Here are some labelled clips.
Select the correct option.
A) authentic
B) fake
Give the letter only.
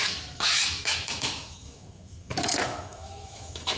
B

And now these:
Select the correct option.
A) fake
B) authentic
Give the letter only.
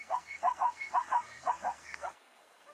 A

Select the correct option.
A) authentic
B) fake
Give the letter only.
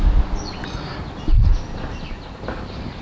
A